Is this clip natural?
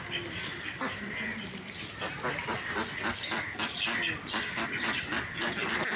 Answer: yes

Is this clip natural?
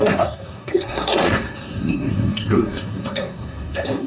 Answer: no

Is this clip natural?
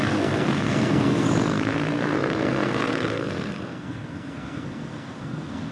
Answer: no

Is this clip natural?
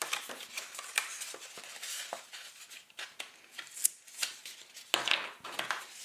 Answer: yes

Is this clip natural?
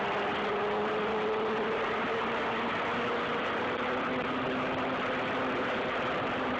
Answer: yes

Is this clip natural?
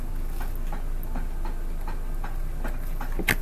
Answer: yes